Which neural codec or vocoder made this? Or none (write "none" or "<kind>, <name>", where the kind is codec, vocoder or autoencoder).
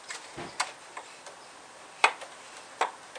none